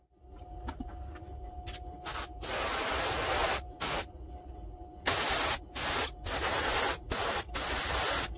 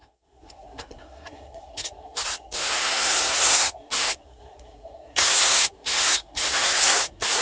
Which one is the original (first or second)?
first